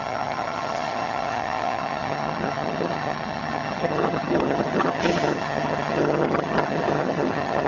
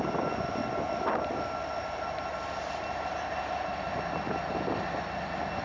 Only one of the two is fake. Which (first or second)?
first